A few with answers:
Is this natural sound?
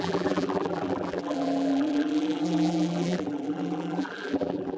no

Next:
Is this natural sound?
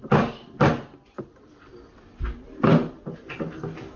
yes